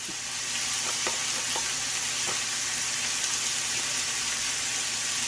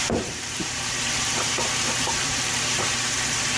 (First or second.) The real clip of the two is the first